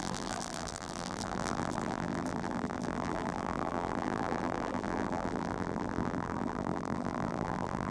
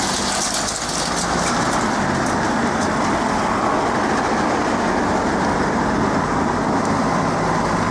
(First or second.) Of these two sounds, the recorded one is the second